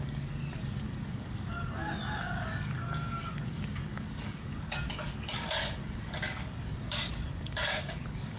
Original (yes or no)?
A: no